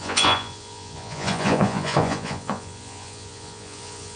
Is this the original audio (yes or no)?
no